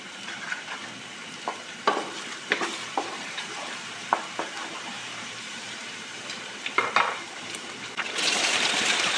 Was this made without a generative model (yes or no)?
no